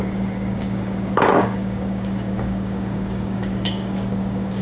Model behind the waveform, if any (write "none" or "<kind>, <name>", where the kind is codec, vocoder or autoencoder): codec, DAC